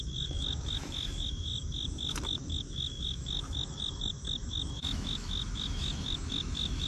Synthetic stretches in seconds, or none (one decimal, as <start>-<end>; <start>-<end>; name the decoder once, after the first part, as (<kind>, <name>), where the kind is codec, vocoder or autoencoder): 0.0-6.9 (autoencoder, DAC-VAE)